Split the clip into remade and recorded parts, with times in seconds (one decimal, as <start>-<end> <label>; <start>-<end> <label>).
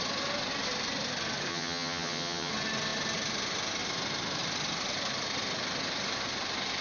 0.0-1.5 recorded; 1.5-2.5 remade; 2.5-6.8 recorded